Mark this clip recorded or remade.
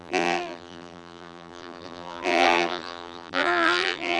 remade